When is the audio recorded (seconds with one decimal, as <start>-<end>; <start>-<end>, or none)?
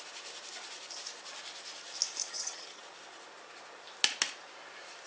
0.0-2.2; 2.8-5.1